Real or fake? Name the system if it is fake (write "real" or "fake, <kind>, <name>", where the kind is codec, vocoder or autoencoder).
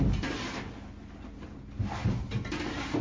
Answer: real